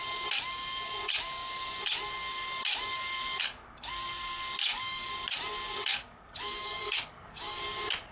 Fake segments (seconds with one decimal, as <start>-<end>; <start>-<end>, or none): 4.6-5.1; 5.9-7.6